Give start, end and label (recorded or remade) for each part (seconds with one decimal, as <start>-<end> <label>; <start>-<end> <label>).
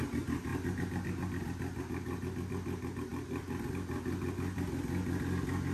0.0-3.1 recorded; 3.1-3.7 remade; 3.7-5.7 recorded